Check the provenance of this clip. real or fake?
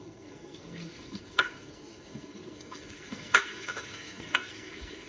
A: fake